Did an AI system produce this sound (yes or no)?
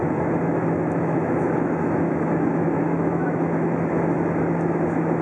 yes